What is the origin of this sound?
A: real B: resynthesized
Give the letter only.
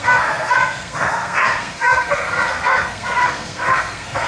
B